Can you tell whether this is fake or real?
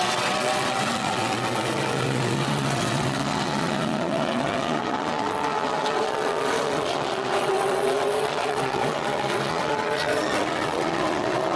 fake